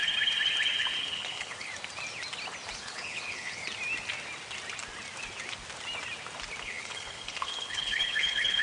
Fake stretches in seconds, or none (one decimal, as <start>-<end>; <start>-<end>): 1.0-1.7; 2.8-3.6; 6.6-8.6